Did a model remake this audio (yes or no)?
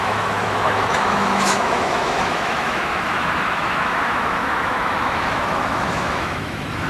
yes